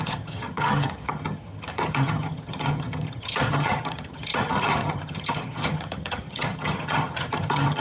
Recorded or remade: remade